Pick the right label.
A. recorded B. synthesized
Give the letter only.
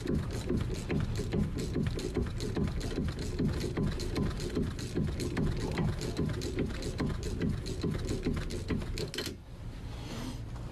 A